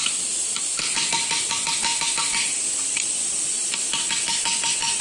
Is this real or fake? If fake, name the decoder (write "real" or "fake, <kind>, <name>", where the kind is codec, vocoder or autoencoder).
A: real